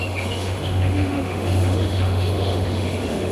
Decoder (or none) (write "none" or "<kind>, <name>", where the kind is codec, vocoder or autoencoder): autoencoder, DAC-VAE